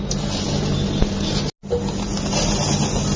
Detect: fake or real real